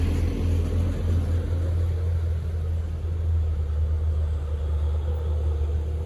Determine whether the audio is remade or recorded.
recorded